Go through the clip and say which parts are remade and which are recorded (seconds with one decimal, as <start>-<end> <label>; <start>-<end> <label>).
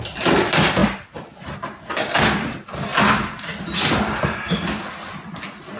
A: 0.0-5.8 recorded